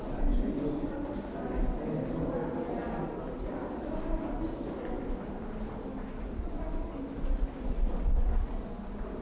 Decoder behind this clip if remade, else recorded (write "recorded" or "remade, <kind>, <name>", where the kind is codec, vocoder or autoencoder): recorded